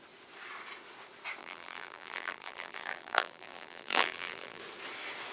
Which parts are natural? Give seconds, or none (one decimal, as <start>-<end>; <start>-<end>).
0.0-1.4; 4.6-5.3